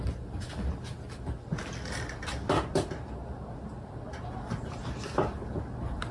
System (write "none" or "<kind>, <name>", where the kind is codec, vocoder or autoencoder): none